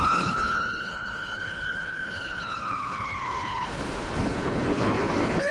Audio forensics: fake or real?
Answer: fake